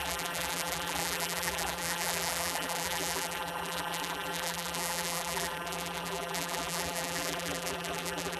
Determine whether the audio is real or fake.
fake